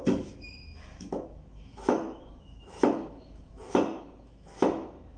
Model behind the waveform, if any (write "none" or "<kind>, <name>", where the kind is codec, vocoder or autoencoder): autoencoder, DAC-VAE